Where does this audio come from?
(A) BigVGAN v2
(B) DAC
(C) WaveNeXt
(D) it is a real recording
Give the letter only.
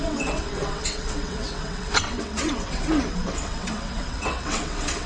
C